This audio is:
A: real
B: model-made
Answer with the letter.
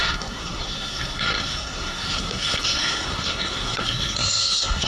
B